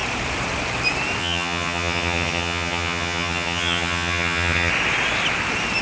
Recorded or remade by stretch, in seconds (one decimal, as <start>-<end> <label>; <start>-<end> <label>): 0.0-1.2 recorded; 1.2-4.7 remade; 4.7-5.8 recorded